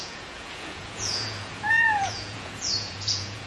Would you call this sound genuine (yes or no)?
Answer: no